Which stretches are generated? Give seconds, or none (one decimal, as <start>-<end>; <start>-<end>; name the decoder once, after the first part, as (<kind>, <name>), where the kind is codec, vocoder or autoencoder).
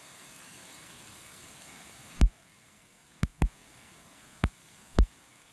0.0-5.5 (codec, SNAC)